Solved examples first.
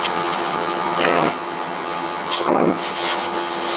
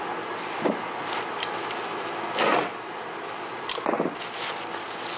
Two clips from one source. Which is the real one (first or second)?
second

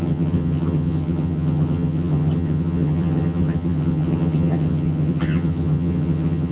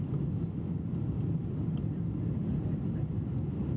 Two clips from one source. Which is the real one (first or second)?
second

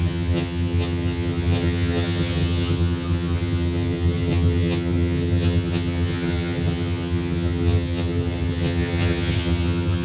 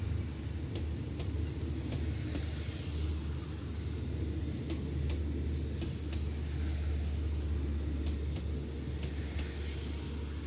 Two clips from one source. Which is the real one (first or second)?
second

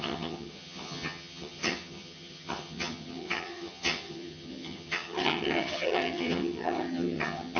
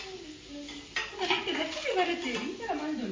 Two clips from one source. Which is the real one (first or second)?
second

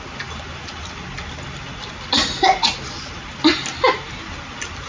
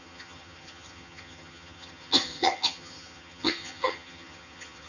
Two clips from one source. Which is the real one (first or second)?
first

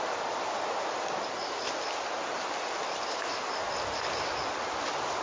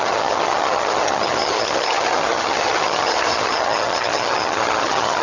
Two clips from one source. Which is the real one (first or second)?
first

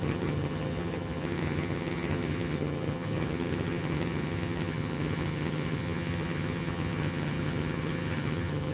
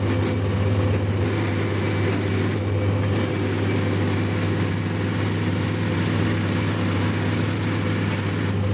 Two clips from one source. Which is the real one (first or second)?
second